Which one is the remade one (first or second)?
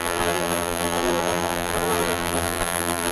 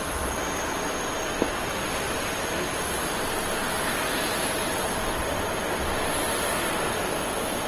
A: first